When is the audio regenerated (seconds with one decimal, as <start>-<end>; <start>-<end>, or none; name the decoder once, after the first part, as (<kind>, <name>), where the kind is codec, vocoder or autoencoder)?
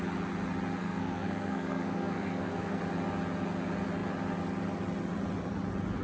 0.8-2.8 (codec, SNAC)